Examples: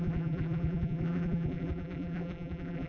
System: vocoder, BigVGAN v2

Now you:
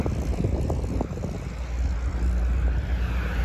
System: none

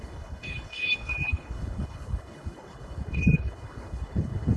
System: codec, HILCodec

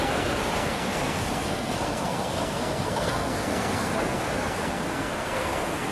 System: codec, SNAC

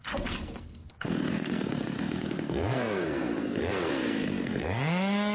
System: codec, SNAC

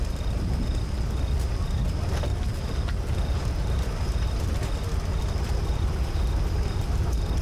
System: none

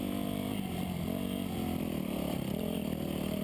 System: none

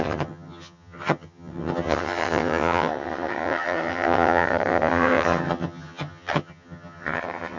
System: vocoder, HiFi-GAN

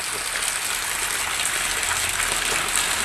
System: none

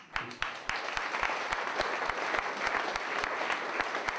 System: none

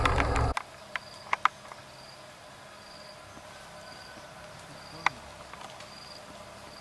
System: none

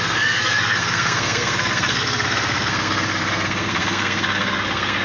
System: codec, SNAC